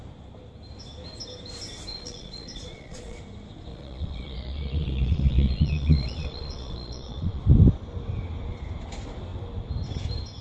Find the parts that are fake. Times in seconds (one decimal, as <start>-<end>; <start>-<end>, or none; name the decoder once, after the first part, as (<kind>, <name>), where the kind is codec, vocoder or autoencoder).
1.9-3.2 (vocoder, Vocos); 3.7-7.4